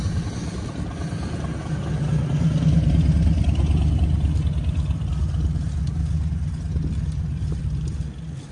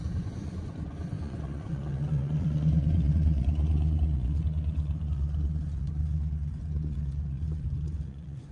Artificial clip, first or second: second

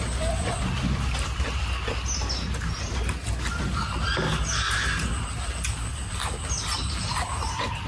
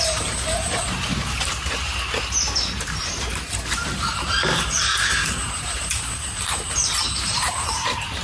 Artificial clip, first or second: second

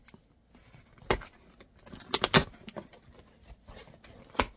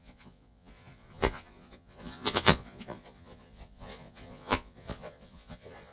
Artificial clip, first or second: second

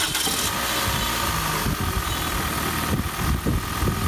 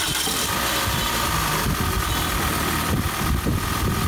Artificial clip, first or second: second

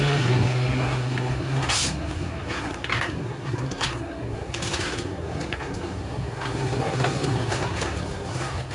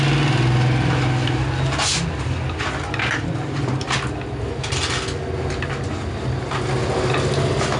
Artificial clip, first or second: first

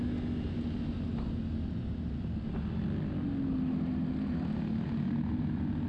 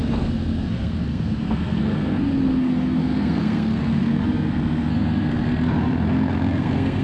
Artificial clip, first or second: second